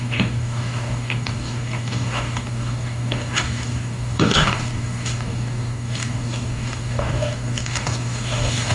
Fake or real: fake